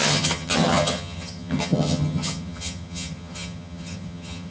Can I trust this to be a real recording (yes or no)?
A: no